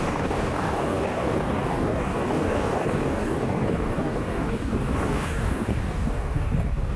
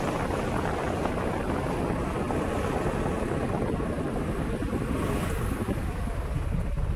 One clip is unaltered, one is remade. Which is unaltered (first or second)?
second